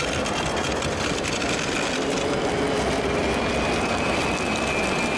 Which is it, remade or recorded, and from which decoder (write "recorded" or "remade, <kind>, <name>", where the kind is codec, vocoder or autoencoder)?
recorded